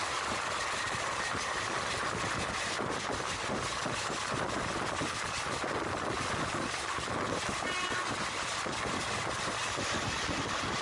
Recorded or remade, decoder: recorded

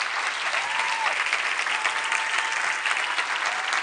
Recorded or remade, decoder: recorded